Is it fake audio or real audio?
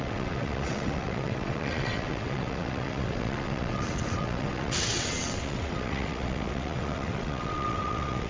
fake